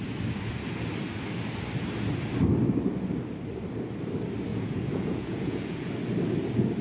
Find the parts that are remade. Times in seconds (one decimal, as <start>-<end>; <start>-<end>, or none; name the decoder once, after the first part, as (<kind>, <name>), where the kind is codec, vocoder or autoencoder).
4.5-5.9 (vocoder, Vocos)